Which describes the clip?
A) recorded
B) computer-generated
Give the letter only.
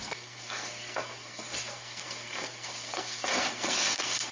B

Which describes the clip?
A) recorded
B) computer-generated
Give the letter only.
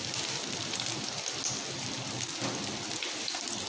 A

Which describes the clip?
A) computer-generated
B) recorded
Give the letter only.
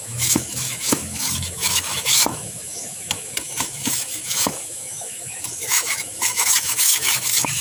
A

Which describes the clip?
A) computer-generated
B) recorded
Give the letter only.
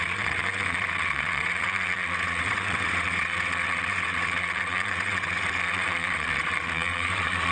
A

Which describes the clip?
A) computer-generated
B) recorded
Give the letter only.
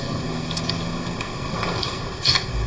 A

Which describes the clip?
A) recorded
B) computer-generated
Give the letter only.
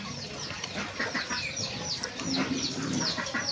A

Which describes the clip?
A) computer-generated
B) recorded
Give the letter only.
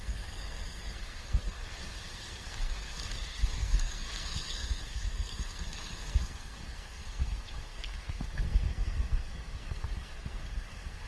A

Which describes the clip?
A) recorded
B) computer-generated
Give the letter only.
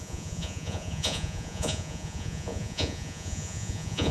B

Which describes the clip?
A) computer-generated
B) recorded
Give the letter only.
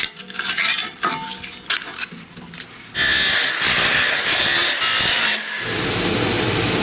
B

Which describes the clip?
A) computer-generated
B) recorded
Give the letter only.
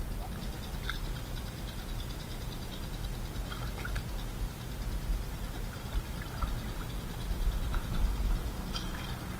B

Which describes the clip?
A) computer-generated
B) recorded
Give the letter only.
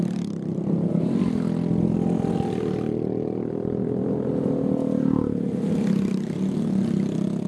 B